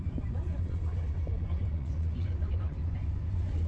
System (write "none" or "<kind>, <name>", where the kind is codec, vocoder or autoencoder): vocoder, Vocos